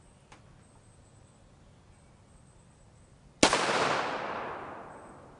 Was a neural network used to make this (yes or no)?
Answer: no